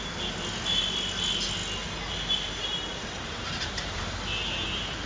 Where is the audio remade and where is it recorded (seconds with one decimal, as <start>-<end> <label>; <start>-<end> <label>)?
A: 0.0-2.9 recorded; 2.9-4.0 remade; 4.0-5.1 recorded